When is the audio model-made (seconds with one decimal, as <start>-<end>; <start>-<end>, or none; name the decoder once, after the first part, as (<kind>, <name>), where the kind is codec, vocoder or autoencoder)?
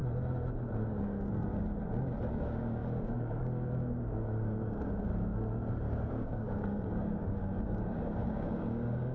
0.9-1.5 (codec, DAC); 2.3-5.1; 6.1-9.1